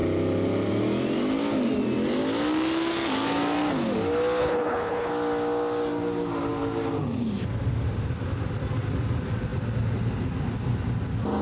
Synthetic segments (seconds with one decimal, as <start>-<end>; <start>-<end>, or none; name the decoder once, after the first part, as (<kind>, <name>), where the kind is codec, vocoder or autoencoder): 4.4-5.1 (codec, HILCodec)